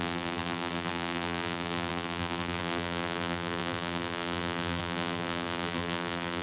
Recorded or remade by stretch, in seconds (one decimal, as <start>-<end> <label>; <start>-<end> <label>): 0.0-6.4 remade